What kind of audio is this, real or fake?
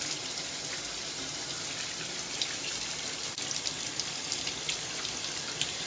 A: real